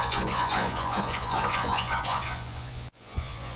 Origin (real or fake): fake